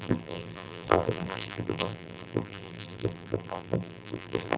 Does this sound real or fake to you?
fake